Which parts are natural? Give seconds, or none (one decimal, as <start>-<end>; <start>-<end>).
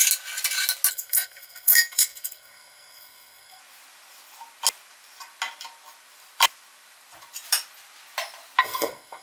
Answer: 0.0-0.9; 3.6-8.6